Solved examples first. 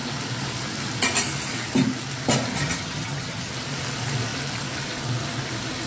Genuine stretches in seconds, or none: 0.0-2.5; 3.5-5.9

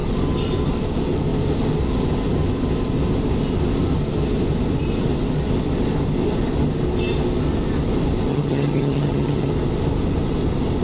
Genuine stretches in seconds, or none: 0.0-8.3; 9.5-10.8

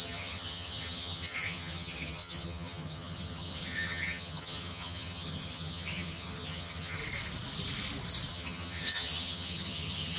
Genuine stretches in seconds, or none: 7.0-8.3

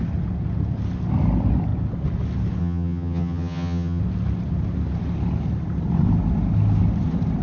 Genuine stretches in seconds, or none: 0.0-2.6; 4.0-7.4

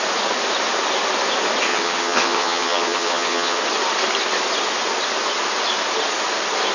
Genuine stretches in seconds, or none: 0.0-1.7; 3.6-6.7

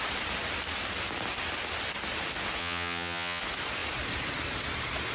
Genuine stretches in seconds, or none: 0.0-2.6; 3.4-5.1

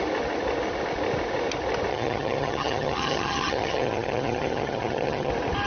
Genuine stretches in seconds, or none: 0.0-1.9; 5.3-5.7